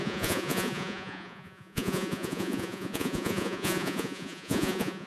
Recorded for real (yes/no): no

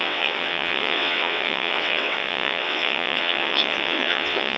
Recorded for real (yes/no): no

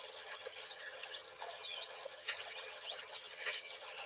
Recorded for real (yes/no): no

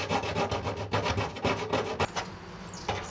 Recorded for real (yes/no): yes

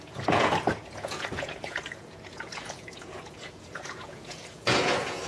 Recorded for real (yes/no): no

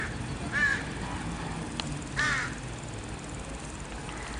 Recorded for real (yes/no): yes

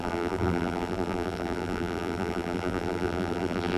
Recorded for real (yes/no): no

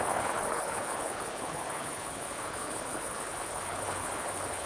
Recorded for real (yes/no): no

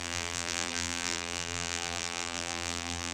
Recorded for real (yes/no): no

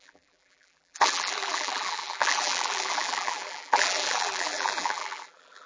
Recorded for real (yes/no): no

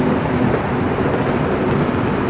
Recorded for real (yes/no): yes